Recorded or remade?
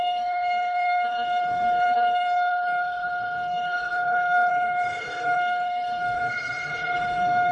remade